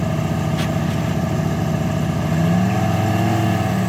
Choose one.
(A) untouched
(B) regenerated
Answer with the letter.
A